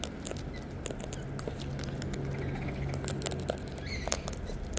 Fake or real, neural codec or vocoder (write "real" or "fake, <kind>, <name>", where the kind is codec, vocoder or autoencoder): real